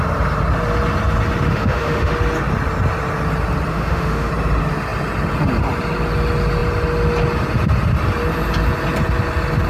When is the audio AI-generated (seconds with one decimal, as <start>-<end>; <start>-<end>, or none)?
1.5-2.1; 3.7-4.3